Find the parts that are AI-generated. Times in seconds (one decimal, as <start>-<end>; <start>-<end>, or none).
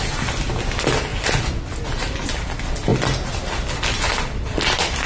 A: 1.1-1.6